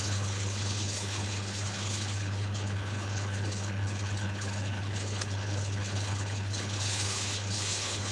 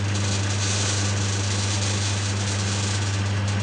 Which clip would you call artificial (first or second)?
first